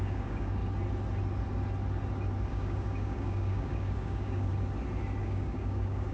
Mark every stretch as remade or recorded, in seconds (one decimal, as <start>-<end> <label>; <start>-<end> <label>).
0.0-0.6 remade; 0.6-2.5 recorded; 2.5-4.5 remade; 4.5-5.2 recorded; 5.2-6.1 remade